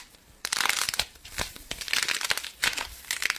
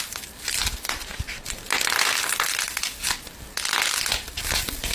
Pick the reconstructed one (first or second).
first